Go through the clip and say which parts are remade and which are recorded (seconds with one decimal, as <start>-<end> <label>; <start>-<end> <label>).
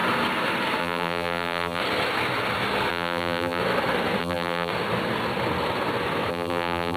0.0-0.8 recorded; 0.8-1.8 remade; 1.8-2.9 recorded; 2.9-3.6 remade; 3.6-4.2 recorded; 4.2-4.7 remade; 4.7-6.3 recorded; 6.3-7.0 remade